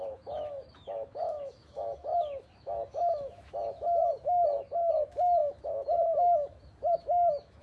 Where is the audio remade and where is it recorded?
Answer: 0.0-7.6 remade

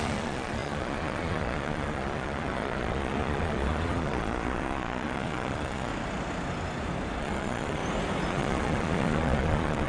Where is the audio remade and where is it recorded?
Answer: 0.0-5.9 remade; 5.9-7.2 recorded; 7.2-7.8 remade; 7.8-8.3 recorded; 8.3-9.9 remade

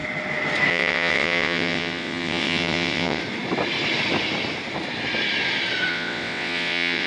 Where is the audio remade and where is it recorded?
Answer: 0.0-0.7 recorded; 0.7-3.2 remade; 3.2-5.9 recorded; 5.9-7.1 remade

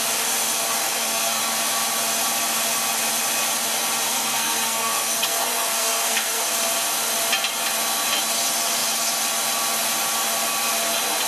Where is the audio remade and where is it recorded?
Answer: 0.0-0.8 recorded; 0.8-1.4 remade; 1.4-4.1 recorded; 4.1-6.4 remade; 6.4-11.3 recorded

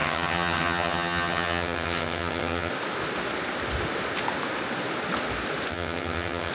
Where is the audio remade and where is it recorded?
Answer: 0.0-2.7 remade; 2.7-5.7 recorded; 5.7-6.5 remade

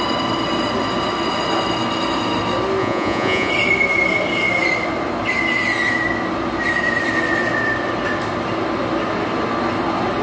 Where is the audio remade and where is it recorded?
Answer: 0.0-2.8 recorded; 2.8-3.5 remade; 3.5-10.2 recorded

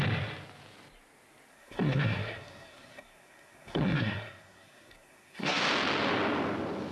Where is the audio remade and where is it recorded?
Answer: 0.0-1.5 recorded; 1.5-5.6 remade; 5.6-6.9 recorded